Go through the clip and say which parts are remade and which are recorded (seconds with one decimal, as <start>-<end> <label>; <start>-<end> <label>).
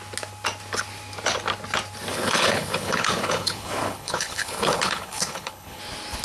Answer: 0.0-2.1 recorded; 2.1-5.8 remade; 5.8-6.2 recorded